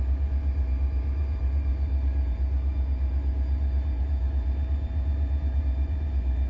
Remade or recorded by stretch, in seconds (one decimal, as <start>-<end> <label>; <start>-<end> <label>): 0.0-6.5 remade

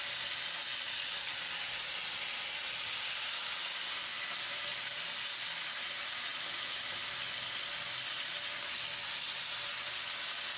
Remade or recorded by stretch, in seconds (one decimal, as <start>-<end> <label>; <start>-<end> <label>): 0.0-4.7 recorded; 4.7-5.3 remade; 5.3-10.6 recorded

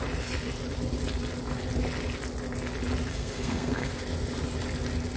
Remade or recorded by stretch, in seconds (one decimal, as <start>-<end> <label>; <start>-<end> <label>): 0.0-3.1 recorded; 3.1-3.9 remade; 3.9-5.2 recorded

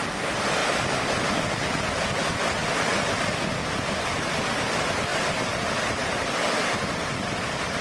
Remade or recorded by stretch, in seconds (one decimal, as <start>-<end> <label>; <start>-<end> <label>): 0.0-0.6 recorded; 0.6-1.4 remade; 1.4-3.6 recorded; 3.6-4.3 remade; 4.3-5.1 recorded; 5.1-7.0 remade; 7.0-7.8 recorded

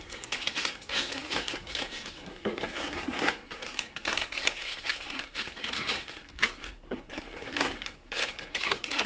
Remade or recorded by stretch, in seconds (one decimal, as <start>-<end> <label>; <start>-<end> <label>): 0.0-9.1 remade

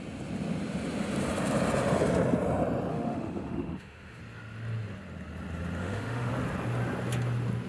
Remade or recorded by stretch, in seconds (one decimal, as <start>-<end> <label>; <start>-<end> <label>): 0.0-2.9 recorded; 2.9-4.2 remade; 4.2-5.8 recorded; 5.8-6.3 remade; 6.3-7.7 recorded

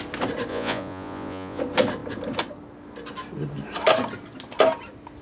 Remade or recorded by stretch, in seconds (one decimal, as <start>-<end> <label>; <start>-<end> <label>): 0.0-0.5 recorded; 0.5-1.6 remade; 1.6-5.2 recorded